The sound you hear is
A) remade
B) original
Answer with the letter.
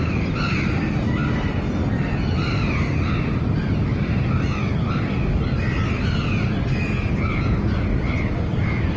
B